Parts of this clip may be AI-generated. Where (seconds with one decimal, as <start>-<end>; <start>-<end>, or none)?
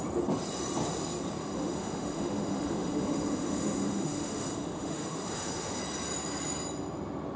1.4-5.8